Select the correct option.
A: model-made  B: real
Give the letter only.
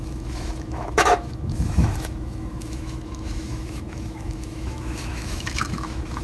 A